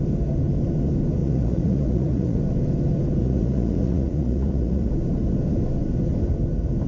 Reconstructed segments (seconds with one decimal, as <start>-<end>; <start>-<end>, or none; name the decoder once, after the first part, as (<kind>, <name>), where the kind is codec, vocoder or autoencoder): 1.2-2.4 (vocoder, Vocos); 3.2-4.9